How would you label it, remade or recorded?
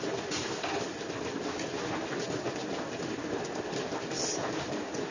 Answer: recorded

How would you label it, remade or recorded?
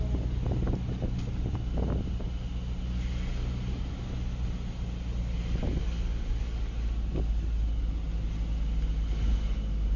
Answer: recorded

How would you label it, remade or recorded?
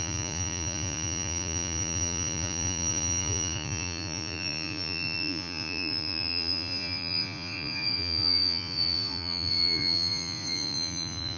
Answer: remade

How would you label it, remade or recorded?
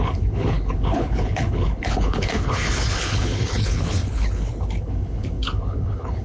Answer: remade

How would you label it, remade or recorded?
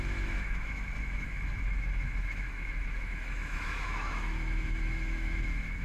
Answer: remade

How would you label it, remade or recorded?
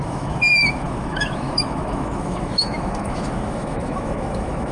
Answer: remade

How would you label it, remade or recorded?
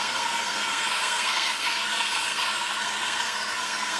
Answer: remade